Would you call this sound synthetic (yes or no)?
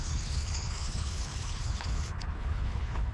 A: yes